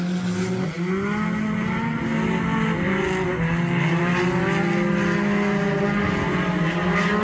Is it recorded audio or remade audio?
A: recorded